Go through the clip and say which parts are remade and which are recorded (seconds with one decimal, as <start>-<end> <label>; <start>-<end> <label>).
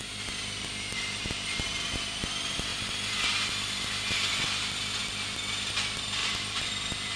0.0-0.9 recorded; 0.9-1.9 remade; 1.9-6.2 recorded; 6.2-6.7 remade; 6.7-7.2 recorded